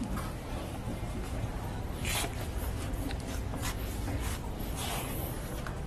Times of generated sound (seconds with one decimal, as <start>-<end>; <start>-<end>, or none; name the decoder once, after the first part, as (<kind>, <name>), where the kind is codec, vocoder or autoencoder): none